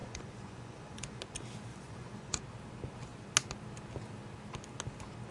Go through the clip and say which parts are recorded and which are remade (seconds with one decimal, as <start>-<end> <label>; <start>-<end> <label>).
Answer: 0.0-1.2 remade; 1.2-1.7 recorded; 1.7-2.4 remade; 2.4-5.3 recorded